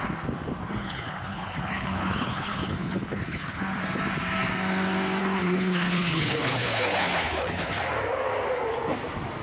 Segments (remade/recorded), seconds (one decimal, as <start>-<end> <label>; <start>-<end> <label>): 0.0-0.8 recorded; 0.8-3.6 remade; 3.6-5.2 recorded; 5.2-7.8 remade; 7.8-9.4 recorded